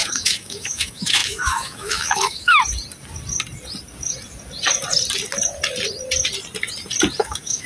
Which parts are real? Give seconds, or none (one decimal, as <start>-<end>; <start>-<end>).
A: 2.6-7.2